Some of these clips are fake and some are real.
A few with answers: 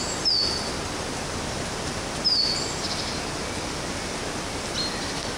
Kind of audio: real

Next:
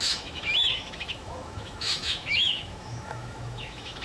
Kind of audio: fake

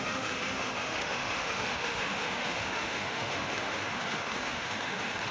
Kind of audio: fake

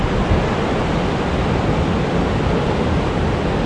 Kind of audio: real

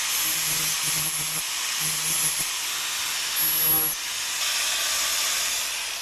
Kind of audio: real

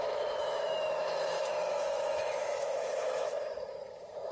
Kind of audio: fake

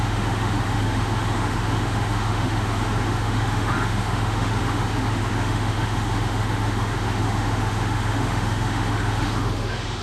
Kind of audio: fake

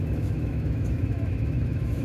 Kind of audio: fake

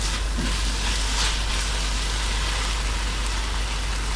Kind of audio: real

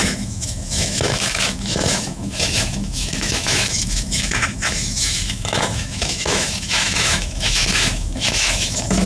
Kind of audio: fake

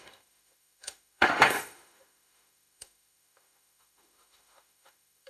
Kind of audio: fake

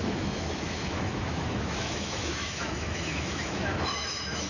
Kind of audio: fake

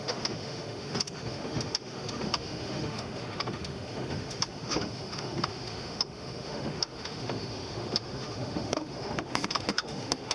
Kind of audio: fake